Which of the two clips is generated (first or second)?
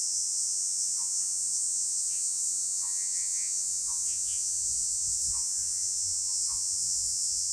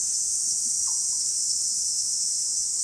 first